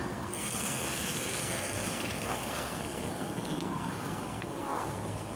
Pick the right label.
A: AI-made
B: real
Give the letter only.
A